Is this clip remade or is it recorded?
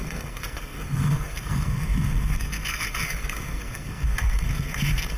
remade